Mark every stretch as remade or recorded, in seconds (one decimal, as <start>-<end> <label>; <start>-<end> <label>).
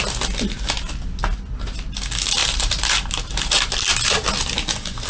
0.0-2.4 recorded; 2.4-3.7 remade; 3.7-5.1 recorded